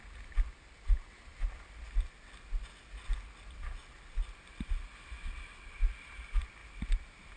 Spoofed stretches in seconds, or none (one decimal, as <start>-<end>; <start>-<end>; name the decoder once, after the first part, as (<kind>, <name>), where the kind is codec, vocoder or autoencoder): none